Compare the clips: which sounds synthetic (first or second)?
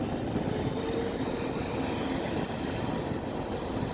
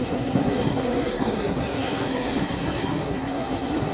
second